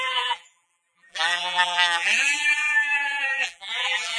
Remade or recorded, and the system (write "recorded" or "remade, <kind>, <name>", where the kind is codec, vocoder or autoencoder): remade, vocoder, BigVGAN v2